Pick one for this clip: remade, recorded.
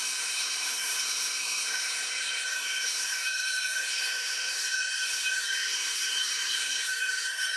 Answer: remade